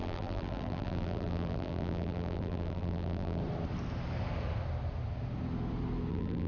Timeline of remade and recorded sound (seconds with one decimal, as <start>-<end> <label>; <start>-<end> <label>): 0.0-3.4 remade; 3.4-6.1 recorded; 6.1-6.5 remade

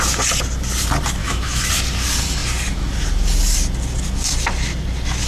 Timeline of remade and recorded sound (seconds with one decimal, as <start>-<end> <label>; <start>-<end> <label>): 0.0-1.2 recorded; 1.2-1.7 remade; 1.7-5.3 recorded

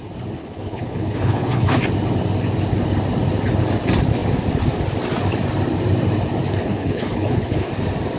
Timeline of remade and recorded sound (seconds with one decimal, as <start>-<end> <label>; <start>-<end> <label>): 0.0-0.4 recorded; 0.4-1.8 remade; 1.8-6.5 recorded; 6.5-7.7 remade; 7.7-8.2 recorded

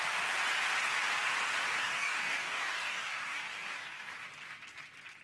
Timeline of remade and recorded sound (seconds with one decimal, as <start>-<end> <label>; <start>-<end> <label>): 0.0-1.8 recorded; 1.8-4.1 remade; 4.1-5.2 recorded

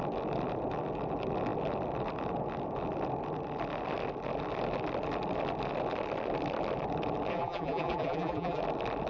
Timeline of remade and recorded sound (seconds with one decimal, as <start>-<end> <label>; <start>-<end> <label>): 0.0-7.3 recorded; 7.3-8.6 remade; 8.6-9.1 recorded

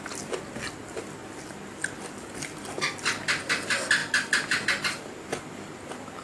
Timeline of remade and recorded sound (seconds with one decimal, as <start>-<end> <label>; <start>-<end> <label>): 0.0-6.2 recorded

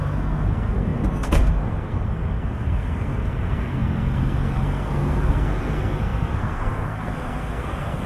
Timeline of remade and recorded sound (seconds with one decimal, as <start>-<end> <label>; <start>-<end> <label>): 0.0-8.1 remade

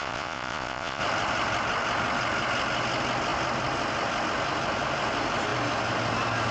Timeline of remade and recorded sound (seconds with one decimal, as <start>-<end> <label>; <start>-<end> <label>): 0.0-1.0 remade; 1.0-6.5 recorded